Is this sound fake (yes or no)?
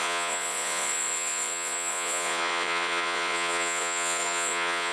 yes